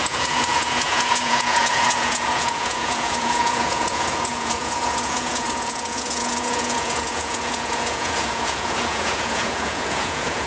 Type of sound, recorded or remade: remade